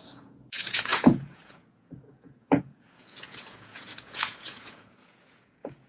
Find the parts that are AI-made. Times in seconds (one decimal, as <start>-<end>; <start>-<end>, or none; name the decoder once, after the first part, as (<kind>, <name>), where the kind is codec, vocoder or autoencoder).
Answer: 0.0-5.9 (vocoder, Vocos)